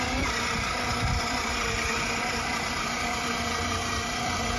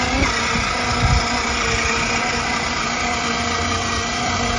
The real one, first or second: second